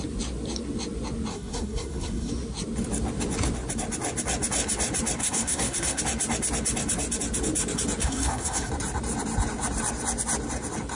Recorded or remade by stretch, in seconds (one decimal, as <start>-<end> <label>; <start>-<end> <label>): 0.0-1.3 recorded; 1.3-2.3 remade; 2.3-5.2 recorded; 5.2-6.0 remade; 6.0-8.0 recorded; 8.0-8.7 remade; 8.7-10.9 recorded